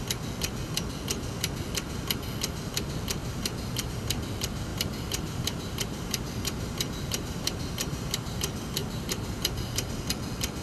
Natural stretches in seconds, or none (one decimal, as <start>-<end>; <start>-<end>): 0.0-3.2; 3.9-4.7; 8.4-8.8; 9.9-10.6